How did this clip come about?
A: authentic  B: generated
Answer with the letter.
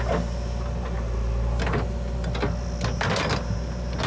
A